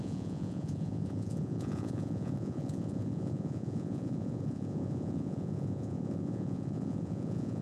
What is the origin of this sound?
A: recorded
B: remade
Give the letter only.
B